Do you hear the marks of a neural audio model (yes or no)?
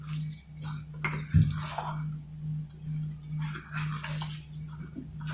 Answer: no